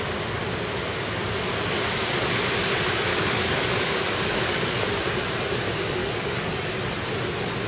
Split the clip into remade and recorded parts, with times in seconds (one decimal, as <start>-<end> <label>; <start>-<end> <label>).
0.0-3.1 recorded; 3.1-4.8 remade; 4.8-6.0 recorded; 6.0-6.8 remade; 6.8-7.7 recorded